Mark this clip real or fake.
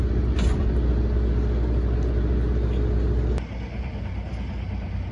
real